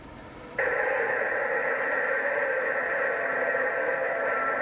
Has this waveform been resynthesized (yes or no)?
yes